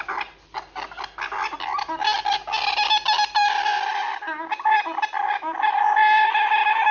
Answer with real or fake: real